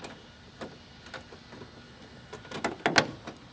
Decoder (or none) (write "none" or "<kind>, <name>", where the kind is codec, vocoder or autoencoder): none